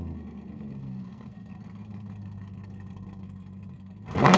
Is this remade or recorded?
remade